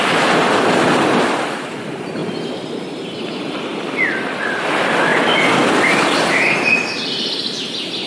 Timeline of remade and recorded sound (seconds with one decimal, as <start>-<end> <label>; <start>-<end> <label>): 0.0-2.2 remade; 2.2-3.1 recorded; 3.1-5.1 remade; 5.1-5.9 recorded; 5.9-8.1 remade